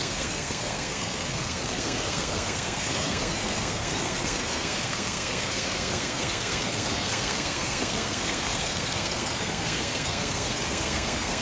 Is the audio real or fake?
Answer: fake